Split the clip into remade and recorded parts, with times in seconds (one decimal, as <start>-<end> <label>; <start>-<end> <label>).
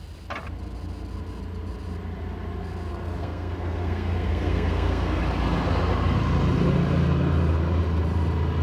0.0-2.9 recorded; 2.9-5.2 remade; 5.2-8.6 recorded